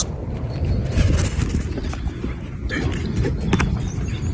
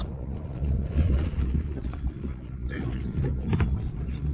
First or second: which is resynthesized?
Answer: second